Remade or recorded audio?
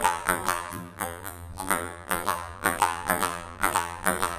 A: remade